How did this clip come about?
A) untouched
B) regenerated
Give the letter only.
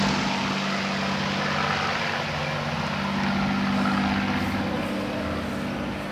A